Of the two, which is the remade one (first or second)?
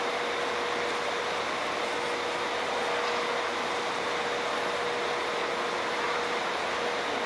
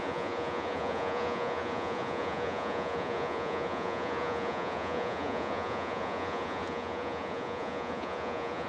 second